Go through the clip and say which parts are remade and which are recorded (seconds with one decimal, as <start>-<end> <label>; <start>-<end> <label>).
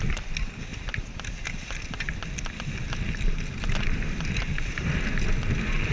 0.0-5.9 recorded